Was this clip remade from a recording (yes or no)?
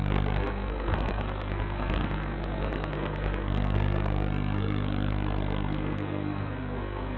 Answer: yes